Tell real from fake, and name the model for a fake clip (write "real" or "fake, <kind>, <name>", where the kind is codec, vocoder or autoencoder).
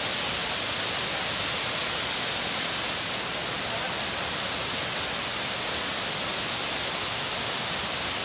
real